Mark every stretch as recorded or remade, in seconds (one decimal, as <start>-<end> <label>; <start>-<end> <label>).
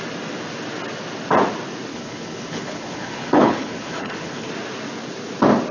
0.0-1.9 recorded; 1.9-4.5 remade; 4.5-5.7 recorded